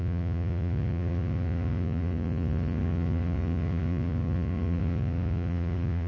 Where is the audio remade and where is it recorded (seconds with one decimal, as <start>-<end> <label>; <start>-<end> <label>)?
0.0-6.1 remade